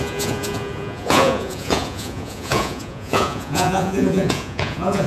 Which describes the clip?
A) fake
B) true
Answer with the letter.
A